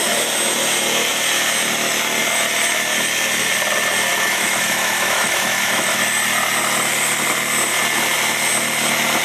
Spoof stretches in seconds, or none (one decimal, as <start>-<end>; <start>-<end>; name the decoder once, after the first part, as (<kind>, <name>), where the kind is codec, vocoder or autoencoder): 4.1-6.0 (autoencoder, DAC-VAE)